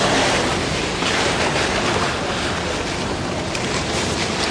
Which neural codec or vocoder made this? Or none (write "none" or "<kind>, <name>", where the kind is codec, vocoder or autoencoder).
none